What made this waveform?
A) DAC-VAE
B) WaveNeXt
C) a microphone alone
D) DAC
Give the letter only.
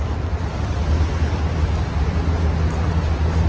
C